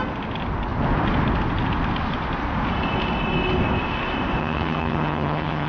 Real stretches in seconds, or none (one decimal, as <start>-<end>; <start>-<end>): 0.0-4.4